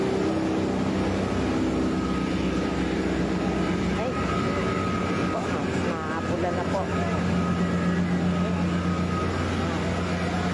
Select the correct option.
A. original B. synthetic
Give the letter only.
A